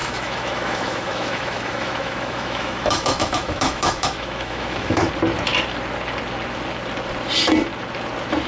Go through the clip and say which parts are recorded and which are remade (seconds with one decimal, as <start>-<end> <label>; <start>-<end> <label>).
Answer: 0.0-5.1 remade; 5.1-8.5 recorded